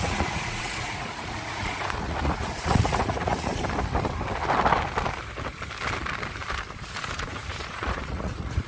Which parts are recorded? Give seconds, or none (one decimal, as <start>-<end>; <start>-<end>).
3.5-7.2